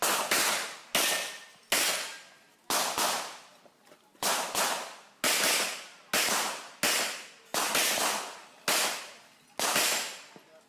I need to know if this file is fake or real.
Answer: real